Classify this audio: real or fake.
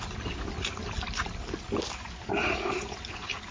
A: real